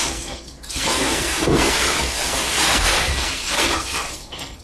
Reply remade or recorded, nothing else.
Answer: remade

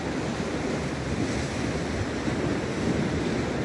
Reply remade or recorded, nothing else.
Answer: remade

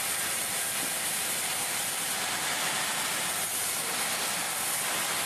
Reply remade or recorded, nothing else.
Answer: recorded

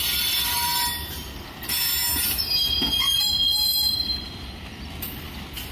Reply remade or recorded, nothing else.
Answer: recorded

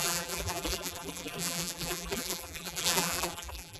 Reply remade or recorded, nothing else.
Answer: remade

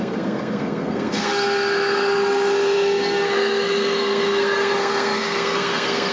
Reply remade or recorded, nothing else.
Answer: remade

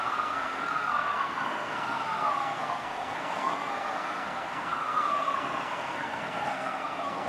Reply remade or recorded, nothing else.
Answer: remade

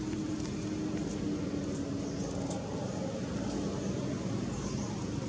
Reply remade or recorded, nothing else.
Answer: recorded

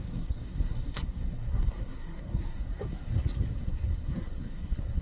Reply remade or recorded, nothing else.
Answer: remade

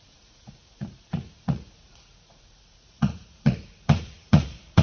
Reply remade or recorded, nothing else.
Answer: remade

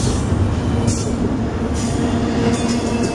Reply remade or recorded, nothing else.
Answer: recorded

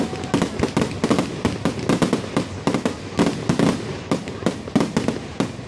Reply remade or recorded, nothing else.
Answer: recorded